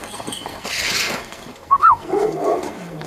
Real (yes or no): no